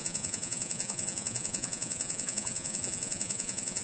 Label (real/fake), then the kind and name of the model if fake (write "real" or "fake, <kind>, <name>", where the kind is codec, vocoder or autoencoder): fake, vocoder, Vocos